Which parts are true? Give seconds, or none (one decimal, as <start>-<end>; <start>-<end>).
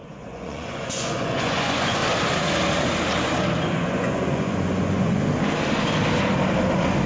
2.0-3.6; 5.2-7.1